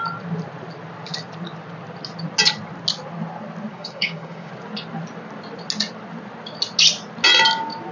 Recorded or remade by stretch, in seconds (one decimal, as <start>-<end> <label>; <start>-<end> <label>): 0.0-3.7 recorded; 3.7-4.5 remade; 4.5-7.9 recorded